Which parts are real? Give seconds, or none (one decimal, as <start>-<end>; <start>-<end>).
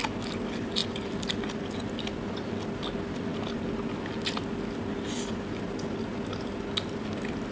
0.0-7.5